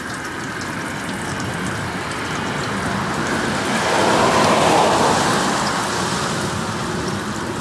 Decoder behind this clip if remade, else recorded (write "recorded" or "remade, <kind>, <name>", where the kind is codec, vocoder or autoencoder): recorded